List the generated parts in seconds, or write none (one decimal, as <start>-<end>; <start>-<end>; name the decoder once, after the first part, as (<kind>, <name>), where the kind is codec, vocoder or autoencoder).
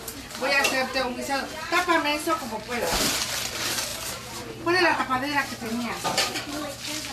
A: 0.0-2.1 (vocoder, BigVGAN v2); 2.7-3.9; 5.0-7.1